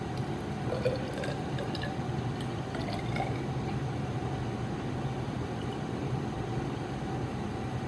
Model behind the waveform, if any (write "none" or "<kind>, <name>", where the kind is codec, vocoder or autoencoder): none